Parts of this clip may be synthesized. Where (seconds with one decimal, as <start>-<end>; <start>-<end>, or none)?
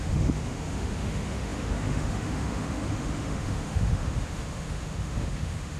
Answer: 0.0-5.8